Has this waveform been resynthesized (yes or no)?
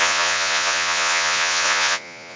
yes